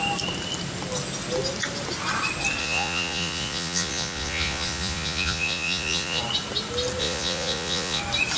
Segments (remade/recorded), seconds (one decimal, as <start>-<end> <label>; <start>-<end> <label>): 0.0-2.6 recorded; 2.6-6.2 remade; 6.2-7.0 recorded; 7.0-8.0 remade; 8.0-8.4 recorded